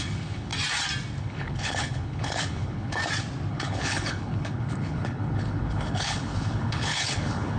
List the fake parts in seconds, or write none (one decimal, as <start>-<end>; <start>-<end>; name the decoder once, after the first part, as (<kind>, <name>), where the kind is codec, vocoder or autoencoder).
0.0-0.5 (codec, HILCodec); 1.2-3.0; 3.5-7.6

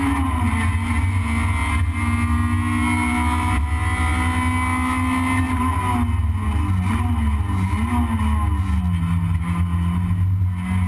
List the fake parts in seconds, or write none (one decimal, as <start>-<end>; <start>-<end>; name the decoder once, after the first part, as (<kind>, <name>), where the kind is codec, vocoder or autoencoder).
none

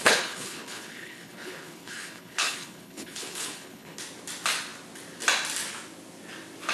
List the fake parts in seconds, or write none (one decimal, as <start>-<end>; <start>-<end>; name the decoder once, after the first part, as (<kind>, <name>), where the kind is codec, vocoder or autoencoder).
0.0-4.0 (codec, HILCodec)

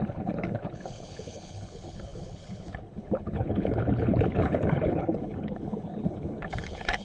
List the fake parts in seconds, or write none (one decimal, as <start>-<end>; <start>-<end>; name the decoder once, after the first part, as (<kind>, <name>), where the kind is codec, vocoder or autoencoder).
0.0-7.0 (codec, HILCodec)